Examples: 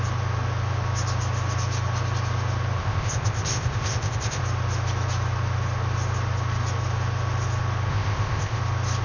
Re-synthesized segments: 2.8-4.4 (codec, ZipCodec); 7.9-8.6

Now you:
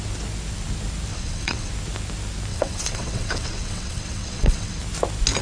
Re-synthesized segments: 1.1-1.7 (vocoder, WaveNeXt); 2.5-4.8

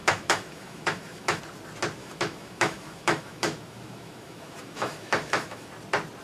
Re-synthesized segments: 0.0-1.4 (autoencoder, DAC-VAE); 2.0-5.7